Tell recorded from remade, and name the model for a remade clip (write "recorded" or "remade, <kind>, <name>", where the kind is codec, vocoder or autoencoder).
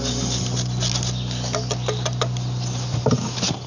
recorded